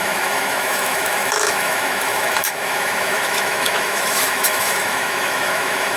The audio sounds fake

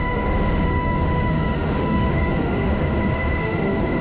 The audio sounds fake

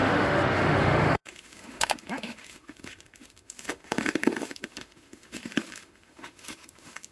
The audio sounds fake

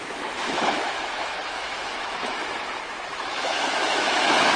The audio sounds fake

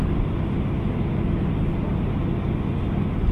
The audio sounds real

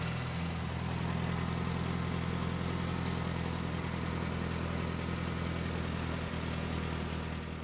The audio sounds real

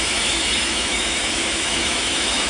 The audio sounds fake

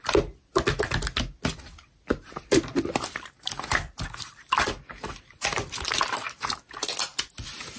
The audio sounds real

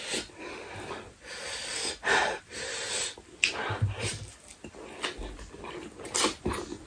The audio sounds real